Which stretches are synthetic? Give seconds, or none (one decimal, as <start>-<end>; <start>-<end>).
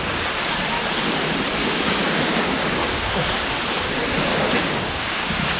1.6-3.5; 4.3-5.6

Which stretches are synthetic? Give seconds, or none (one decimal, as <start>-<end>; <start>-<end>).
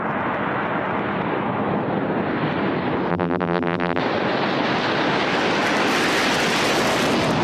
3.1-4.0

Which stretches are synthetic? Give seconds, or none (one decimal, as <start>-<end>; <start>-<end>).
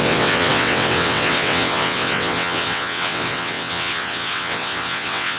0.0-5.4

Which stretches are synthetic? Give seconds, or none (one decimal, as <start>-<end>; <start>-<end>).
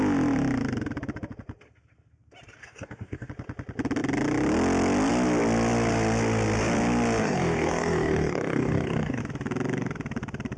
2.6-3.3; 7.2-9.2